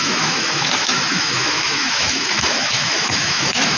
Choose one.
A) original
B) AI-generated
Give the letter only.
B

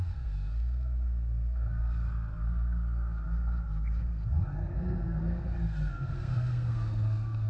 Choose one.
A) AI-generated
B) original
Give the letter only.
A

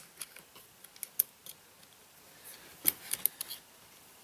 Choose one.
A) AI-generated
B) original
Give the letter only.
B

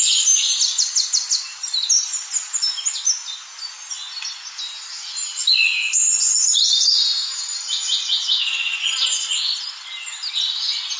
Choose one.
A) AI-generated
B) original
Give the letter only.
B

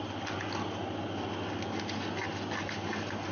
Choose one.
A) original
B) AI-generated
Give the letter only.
A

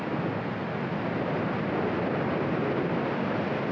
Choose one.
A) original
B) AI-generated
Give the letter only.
A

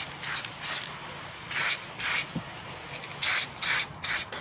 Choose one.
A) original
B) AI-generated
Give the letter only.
A